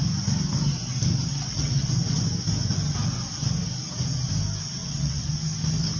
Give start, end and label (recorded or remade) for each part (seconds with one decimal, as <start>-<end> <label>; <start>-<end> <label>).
0.0-1.3 recorded; 1.3-1.9 remade; 1.9-4.8 recorded; 4.8-5.4 remade; 5.4-6.0 recorded